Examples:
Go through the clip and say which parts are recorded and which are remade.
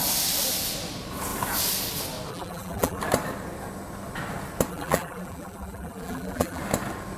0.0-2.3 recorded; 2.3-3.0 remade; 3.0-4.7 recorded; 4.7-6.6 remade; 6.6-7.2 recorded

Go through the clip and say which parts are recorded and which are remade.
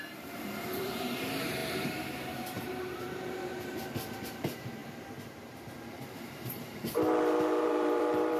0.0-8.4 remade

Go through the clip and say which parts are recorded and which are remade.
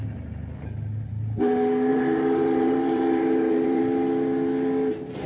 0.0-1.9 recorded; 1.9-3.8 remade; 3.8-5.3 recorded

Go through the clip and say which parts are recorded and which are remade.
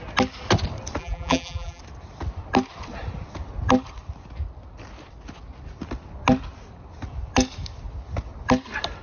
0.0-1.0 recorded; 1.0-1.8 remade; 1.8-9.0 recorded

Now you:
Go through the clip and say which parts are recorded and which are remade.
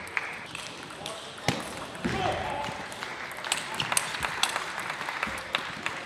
0.0-3.1 remade; 3.1-4.3 recorded; 4.3-6.1 remade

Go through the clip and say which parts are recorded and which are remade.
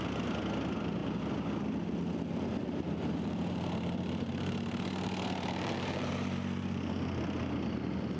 0.0-2.6 recorded; 2.6-6.1 remade; 6.1-8.2 recorded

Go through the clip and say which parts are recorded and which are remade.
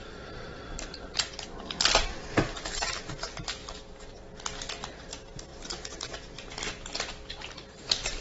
0.0-3.1 recorded; 3.1-3.6 remade; 3.6-5.0 recorded; 5.0-5.5 remade; 5.5-8.2 recorded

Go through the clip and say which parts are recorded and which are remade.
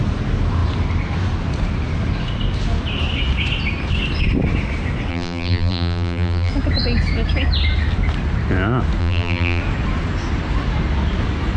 0.0-5.1 recorded; 5.1-6.5 remade; 6.5-9.0 recorded; 9.0-9.6 remade; 9.6-11.6 recorded